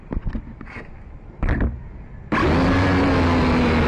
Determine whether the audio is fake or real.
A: real